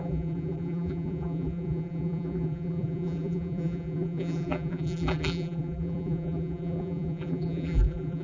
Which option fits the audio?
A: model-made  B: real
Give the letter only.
A